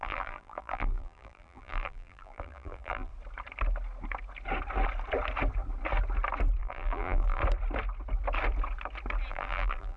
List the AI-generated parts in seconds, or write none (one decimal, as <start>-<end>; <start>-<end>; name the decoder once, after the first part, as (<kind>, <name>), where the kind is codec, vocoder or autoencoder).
0.0-3.1 (vocoder, BigVGAN v2); 6.6-7.4; 9.3-10.0